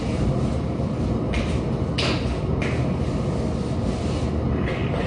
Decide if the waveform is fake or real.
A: real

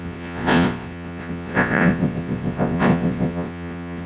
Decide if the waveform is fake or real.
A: fake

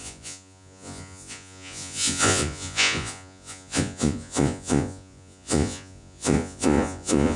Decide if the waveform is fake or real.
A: fake